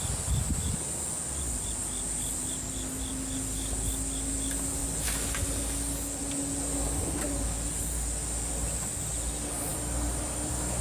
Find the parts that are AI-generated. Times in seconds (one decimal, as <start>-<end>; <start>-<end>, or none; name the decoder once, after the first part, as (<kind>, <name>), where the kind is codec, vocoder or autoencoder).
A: 9.7-10.8 (vocoder, BigVGAN v2)